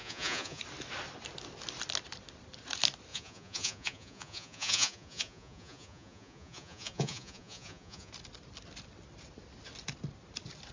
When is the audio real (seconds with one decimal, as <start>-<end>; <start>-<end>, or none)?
0.6-3.1; 8.1-10.7